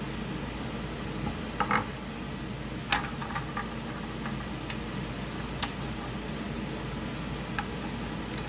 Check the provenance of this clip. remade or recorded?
recorded